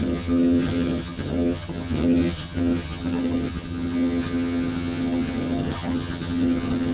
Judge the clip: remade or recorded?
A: remade